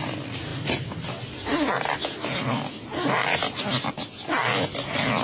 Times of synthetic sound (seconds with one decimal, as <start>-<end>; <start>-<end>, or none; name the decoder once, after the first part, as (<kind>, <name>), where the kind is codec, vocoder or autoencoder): none